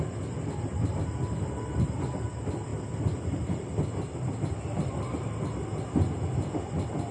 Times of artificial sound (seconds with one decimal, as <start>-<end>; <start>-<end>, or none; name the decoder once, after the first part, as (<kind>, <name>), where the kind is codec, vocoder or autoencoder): none